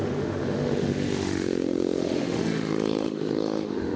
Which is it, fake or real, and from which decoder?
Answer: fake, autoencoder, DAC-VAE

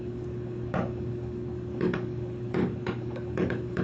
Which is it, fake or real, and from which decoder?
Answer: fake, codec, DAC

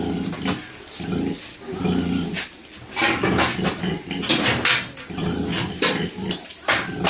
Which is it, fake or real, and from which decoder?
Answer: real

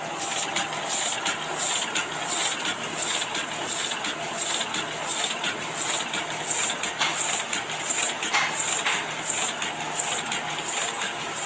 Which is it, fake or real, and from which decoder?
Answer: real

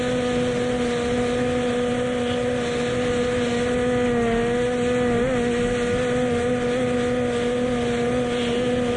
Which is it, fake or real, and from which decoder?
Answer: real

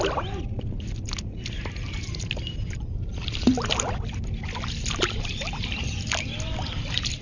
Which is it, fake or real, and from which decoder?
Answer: real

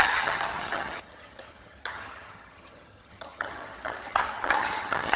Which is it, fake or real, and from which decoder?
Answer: fake, vocoder, HiFi-GAN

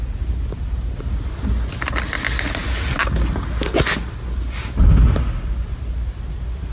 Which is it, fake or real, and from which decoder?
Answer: real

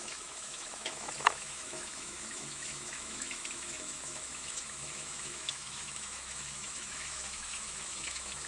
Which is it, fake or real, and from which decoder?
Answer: fake, autoencoder, DAC-VAE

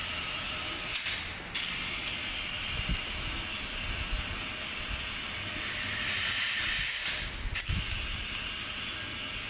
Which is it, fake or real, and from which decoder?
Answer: real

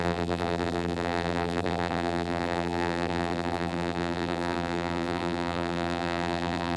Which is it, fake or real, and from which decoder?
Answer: fake, vocoder, BigVGAN v2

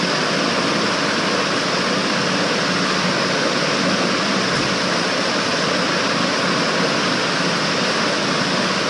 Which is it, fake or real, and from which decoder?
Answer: real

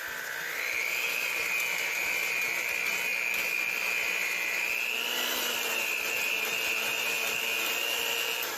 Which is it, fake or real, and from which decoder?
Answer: real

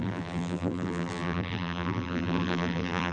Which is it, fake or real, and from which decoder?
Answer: fake, vocoder, BigVGAN v2